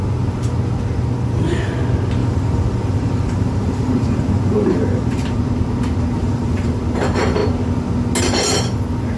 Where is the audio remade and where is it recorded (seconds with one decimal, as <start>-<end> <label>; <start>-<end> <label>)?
0.0-2.2 recorded; 2.2-5.4 remade; 5.4-6.2 recorded; 6.2-6.8 remade; 6.8-9.2 recorded